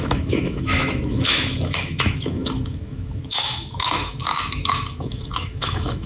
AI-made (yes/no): yes